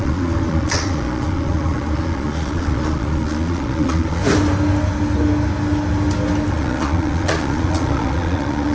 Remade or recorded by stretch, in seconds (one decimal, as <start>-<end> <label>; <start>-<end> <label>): 0.0-4.2 remade; 4.2-6.5 recorded; 6.5-8.7 remade